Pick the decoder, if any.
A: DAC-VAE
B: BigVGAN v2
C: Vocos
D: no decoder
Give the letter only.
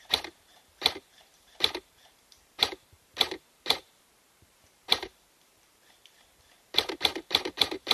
B